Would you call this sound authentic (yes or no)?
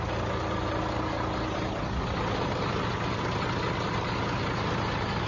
yes